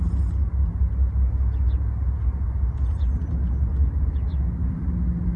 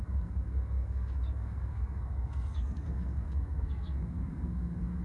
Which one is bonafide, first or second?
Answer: first